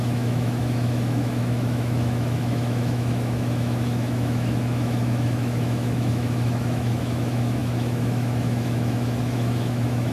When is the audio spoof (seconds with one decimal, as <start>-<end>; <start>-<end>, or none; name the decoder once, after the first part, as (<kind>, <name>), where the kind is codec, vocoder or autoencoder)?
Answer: 0.0-10.1 (autoencoder, DAC-VAE)